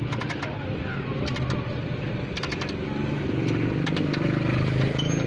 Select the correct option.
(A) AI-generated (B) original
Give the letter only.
B